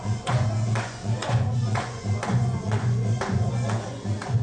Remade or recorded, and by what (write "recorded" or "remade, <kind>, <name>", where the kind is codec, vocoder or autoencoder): remade, vocoder, Vocos